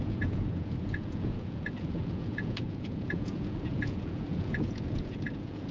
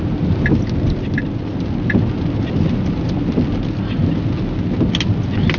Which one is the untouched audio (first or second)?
second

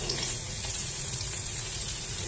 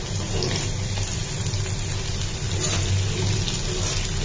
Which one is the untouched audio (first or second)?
second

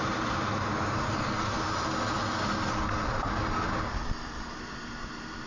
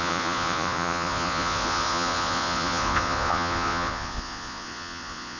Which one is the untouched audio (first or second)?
first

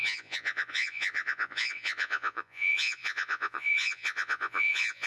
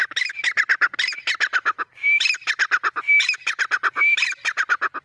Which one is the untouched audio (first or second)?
second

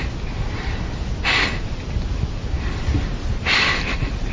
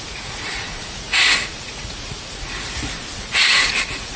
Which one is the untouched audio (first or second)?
first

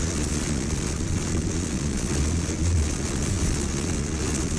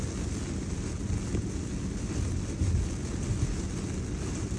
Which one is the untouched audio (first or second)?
second